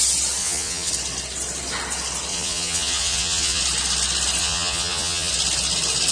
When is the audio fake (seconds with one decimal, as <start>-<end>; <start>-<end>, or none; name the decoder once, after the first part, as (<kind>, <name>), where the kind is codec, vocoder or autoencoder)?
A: 0.4-0.9 (vocoder, Vocos); 2.3-3.6; 4.4-5.3